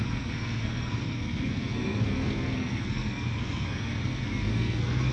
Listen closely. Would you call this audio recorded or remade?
remade